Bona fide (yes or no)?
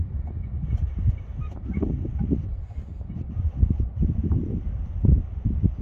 yes